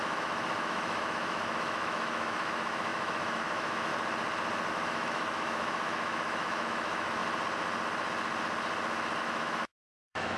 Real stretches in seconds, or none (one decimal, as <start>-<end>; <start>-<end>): 3.9-4.7; 7.2-9.2